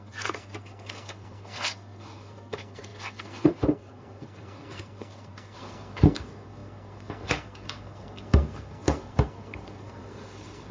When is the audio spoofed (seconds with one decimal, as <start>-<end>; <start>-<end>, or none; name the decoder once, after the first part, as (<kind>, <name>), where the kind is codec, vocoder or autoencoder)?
0.0-10.7 (codec, SNAC)